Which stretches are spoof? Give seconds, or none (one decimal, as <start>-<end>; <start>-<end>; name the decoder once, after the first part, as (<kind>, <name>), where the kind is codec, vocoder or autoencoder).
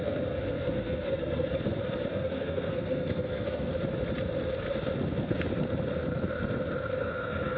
0.0-1.5 (codec, SNAC); 2.1-3.7; 7.0-7.6